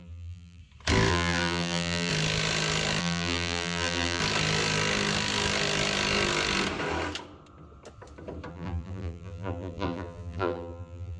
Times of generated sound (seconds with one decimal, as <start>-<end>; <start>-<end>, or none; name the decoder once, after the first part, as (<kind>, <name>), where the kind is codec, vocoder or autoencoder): 0.0-0.6 (vocoder, BigVGAN v2); 1.1-2.1; 3.0-4.2; 8.5-11.2